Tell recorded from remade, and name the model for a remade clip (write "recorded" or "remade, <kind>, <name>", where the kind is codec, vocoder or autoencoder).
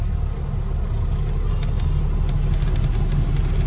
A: recorded